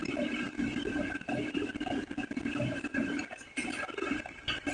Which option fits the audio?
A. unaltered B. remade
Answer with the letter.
A